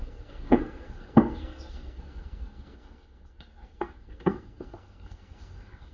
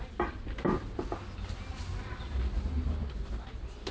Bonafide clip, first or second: second